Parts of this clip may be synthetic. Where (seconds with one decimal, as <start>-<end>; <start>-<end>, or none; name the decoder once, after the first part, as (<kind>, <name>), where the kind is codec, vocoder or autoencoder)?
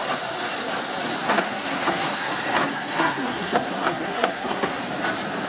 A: 1.2-2.3 (codec, SNAC); 2.7-4.8